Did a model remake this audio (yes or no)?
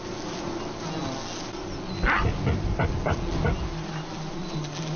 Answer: no